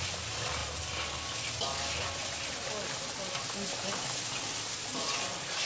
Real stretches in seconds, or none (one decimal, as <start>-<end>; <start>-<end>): 0.0-5.7

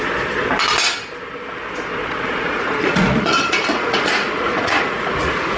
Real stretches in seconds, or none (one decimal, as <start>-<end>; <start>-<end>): 0.0-2.0

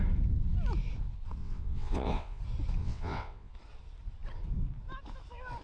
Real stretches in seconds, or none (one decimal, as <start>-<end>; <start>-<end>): 0.0-1.4; 2.4-2.8; 3.5-5.6

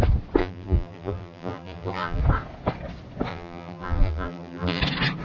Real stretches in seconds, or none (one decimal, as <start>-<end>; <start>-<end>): 0.0-0.4; 2.2-3.3; 4.8-5.2

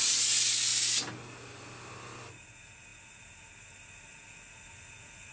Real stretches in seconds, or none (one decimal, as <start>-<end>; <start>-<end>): 0.0-5.3

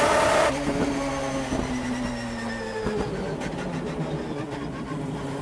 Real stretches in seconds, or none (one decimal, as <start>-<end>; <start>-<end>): 0.0-5.4